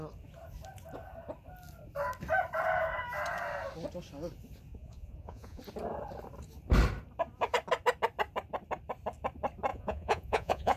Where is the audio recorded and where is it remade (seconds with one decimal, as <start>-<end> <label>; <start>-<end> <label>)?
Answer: 0.0-4.7 recorded; 4.7-5.6 remade; 5.6-9.7 recorded; 9.7-10.8 remade